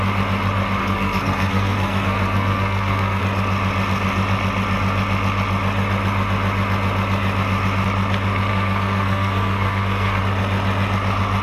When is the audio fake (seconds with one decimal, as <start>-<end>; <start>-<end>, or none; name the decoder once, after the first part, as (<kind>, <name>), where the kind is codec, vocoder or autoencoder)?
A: 0.8-3.2 (codec, SNAC); 8.5-10.2